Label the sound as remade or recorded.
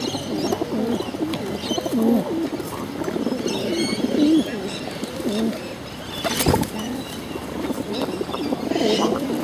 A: recorded